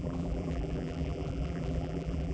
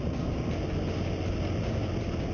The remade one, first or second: first